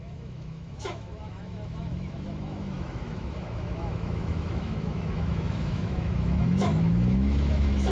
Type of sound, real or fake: fake